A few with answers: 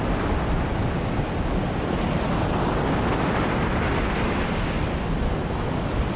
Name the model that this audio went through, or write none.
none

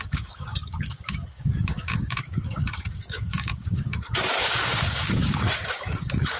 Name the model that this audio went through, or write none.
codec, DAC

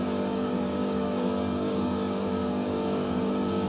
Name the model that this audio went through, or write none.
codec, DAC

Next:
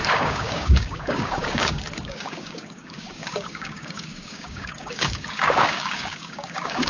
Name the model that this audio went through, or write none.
codec, DAC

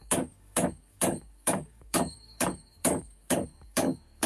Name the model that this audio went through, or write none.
codec, DAC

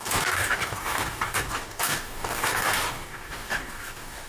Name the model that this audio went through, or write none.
codec, DAC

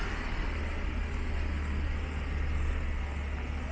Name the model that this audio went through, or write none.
none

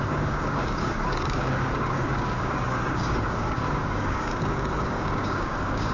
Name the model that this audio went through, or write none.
codec, DAC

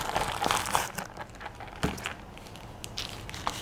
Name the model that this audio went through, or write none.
none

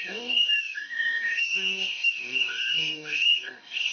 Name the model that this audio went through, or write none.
codec, DAC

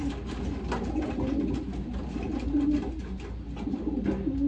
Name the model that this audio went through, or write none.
none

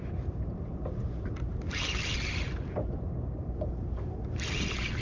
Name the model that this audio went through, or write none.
none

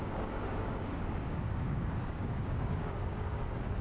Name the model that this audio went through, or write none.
codec, DAC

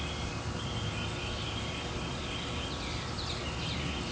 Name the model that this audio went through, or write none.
none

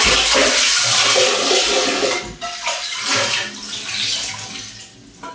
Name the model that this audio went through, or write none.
none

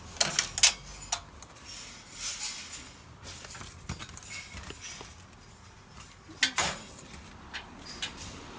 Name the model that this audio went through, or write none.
none